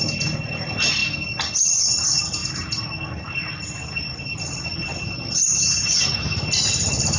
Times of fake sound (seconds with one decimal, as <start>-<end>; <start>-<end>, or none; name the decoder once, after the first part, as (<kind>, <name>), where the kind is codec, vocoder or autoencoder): none

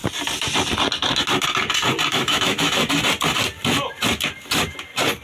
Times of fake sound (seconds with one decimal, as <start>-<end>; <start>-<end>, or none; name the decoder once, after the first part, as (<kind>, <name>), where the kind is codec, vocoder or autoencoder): 2.1-2.9 (autoencoder, DAC-VAE)